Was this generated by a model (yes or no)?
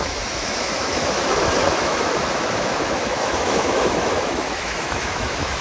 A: yes